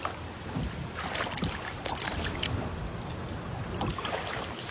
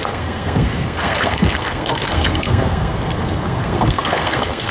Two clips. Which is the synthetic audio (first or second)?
second